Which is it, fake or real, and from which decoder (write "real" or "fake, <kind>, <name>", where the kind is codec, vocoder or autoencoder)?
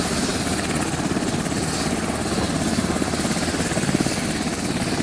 real